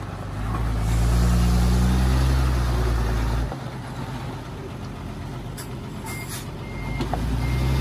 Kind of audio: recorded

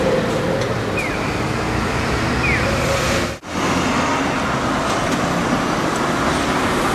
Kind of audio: recorded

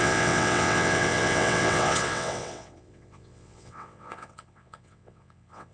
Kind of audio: remade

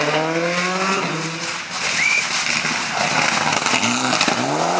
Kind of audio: recorded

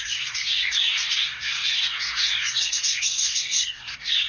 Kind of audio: remade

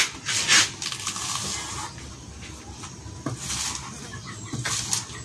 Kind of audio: recorded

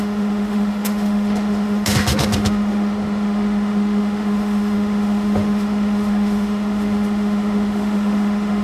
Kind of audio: remade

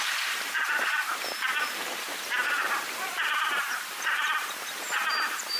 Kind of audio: remade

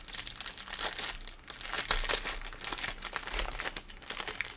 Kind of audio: recorded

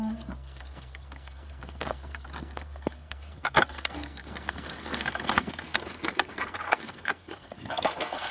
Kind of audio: remade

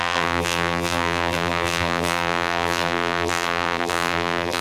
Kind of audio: remade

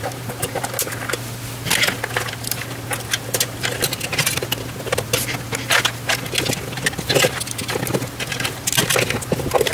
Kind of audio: recorded